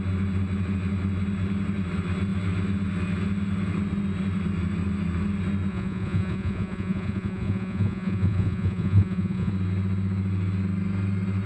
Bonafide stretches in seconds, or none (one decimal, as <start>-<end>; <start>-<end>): 0.0-5.7; 9.5-11.5